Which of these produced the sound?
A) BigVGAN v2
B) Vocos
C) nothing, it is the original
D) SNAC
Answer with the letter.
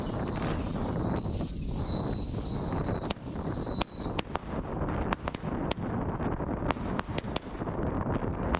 C